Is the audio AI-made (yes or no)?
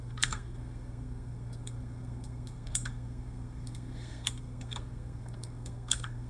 yes